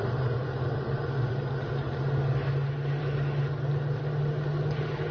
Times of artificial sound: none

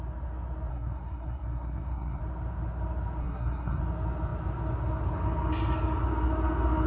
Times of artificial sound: 0.7-2.2 (codec, SNAC); 3.2-3.8

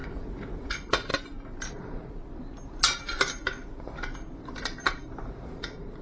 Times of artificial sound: 0.0-1.1 (vocoder, Vocos); 1.7-2.2; 5.3-6.0

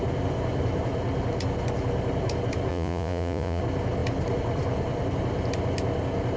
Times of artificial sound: 2.7-3.6 (vocoder, Vocos)

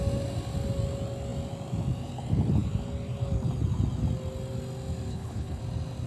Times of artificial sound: 5.1-5.6 (codec, HILCodec)

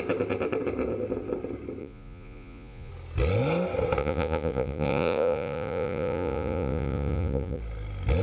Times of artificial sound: 1.8-2.9 (vocoder, Vocos); 4.0-7.6